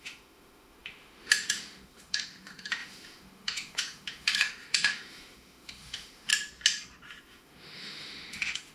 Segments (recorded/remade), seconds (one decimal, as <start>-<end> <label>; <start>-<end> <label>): 0.0-6.3 remade; 6.3-7.2 recorded; 7.2-8.7 remade